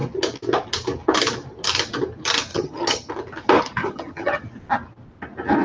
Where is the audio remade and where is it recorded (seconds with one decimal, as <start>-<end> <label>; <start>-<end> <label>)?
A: 0.0-2.5 recorded; 2.5-3.1 remade; 3.1-3.8 recorded; 3.8-4.4 remade; 4.4-5.6 recorded